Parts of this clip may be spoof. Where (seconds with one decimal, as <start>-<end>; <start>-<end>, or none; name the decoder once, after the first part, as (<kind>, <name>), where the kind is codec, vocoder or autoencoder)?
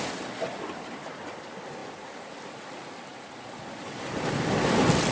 none